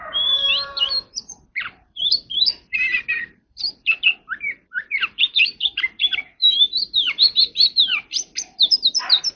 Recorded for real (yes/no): no